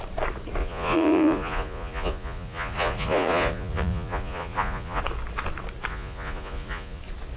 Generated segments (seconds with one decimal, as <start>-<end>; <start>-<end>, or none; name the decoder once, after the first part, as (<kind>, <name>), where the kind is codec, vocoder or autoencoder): 0.6-5.0 (vocoder, Vocos); 5.9-7.0